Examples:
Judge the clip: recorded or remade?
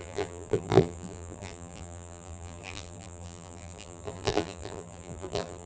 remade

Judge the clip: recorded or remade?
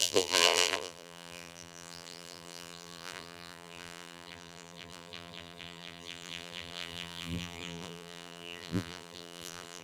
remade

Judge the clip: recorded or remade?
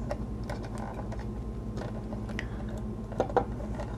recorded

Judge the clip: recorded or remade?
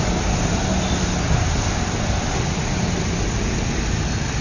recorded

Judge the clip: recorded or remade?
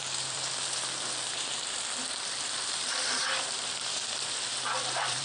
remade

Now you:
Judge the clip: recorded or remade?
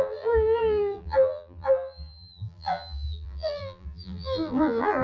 remade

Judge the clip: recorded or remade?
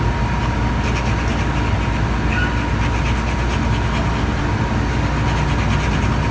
recorded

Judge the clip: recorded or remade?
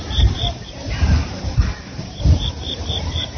remade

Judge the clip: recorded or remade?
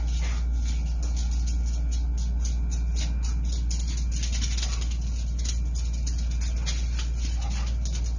recorded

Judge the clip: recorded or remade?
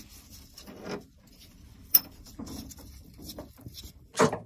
remade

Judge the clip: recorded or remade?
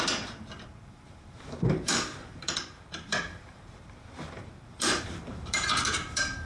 remade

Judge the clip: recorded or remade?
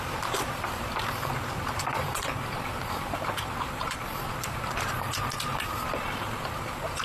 remade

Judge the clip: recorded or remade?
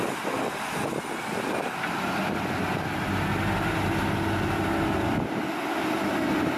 recorded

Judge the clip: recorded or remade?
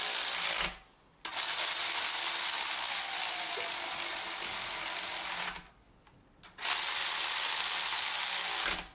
recorded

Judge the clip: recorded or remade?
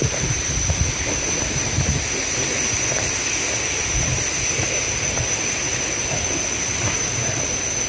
remade